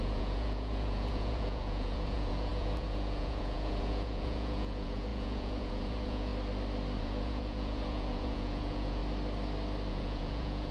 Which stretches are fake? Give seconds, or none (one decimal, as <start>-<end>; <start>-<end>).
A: 0.0-6.3; 7.0-9.0; 9.9-10.7